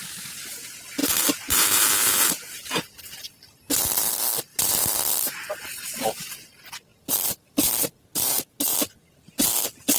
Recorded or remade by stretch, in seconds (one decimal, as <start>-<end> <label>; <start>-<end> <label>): 0.0-1.0 recorded; 1.0-2.7 remade; 2.7-10.0 recorded